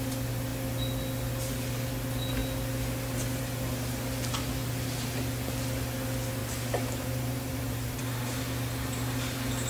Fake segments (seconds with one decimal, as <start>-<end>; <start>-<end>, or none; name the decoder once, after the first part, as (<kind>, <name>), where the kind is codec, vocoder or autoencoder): 6.4-8.0 (vocoder, BigVGAN v2)